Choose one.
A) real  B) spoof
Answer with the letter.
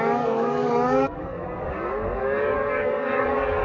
B